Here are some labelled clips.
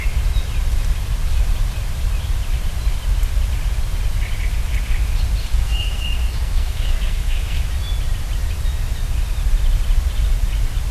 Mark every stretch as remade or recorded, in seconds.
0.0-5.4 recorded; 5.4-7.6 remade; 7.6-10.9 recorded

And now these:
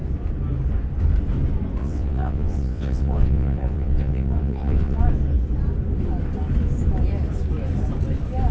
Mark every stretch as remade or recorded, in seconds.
0.0-1.8 recorded; 1.8-5.0 remade; 5.0-8.5 recorded

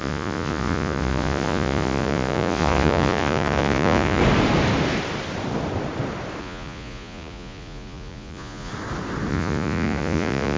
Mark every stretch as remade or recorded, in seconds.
0.0-4.2 remade; 4.2-6.4 recorded; 6.4-8.7 remade; 8.7-9.3 recorded; 9.3-10.6 remade

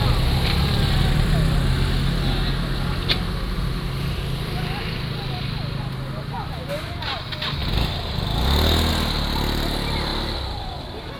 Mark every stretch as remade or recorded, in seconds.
0.0-11.2 recorded

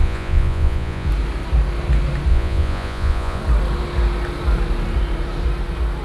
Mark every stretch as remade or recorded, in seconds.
0.0-1.1 remade; 1.1-2.3 recorded; 2.3-3.4 remade; 3.4-6.0 recorded

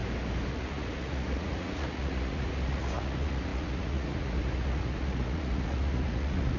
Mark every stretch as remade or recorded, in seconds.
0.0-0.5 recorded; 0.5-6.6 remade

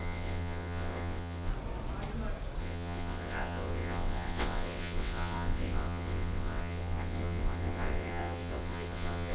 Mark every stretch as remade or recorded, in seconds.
0.0-1.5 remade; 1.5-2.6 recorded; 2.6-9.3 remade